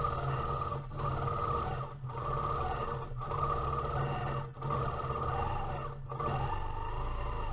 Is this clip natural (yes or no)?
yes